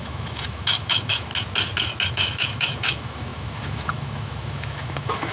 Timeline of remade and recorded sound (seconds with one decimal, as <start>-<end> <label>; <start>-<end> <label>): 0.0-1.3 remade; 1.3-2.1 recorded; 2.1-5.3 remade

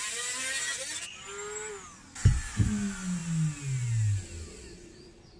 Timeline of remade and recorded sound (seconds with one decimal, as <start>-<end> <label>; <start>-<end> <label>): 0.0-5.4 recorded